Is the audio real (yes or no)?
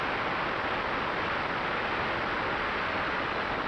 yes